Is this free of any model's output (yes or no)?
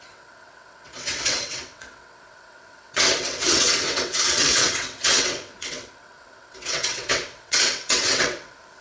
no